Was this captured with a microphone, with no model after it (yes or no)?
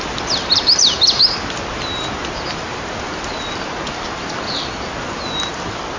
yes